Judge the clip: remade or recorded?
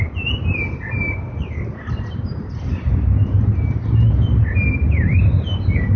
recorded